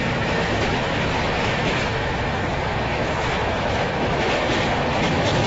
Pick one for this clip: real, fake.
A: fake